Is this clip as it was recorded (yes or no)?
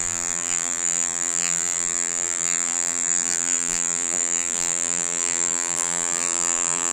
no